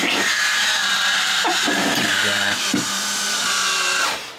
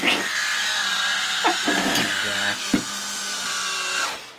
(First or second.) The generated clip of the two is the first